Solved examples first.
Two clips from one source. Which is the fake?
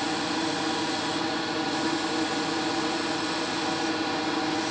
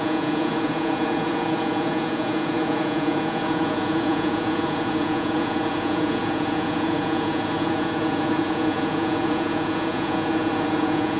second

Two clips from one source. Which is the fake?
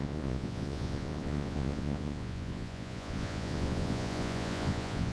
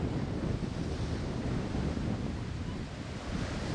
first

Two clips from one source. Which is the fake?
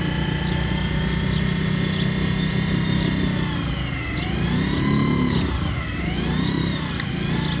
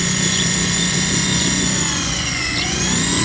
second